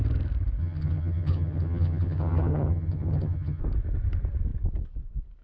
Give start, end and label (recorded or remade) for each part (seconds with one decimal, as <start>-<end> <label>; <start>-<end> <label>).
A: 0.0-0.6 recorded; 0.6-3.6 remade; 3.6-5.4 recorded